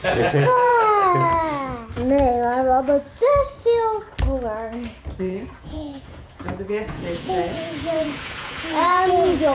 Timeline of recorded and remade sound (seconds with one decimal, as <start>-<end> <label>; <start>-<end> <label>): 0.0-0.7 remade; 0.7-5.2 recorded; 5.2-9.5 remade